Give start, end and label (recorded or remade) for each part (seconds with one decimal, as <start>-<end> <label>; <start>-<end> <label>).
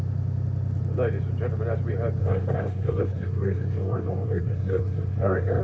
0.0-2.2 recorded; 2.2-5.6 remade